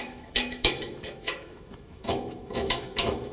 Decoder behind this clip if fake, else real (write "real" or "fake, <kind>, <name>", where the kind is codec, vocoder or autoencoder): fake, autoencoder, DAC-VAE